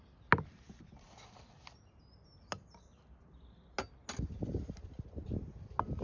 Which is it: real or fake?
real